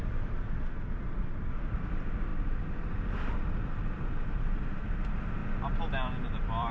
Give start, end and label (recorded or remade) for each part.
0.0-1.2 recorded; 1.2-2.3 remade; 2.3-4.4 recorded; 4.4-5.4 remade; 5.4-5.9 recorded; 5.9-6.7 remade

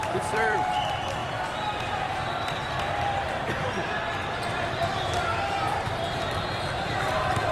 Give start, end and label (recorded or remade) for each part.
0.0-7.5 remade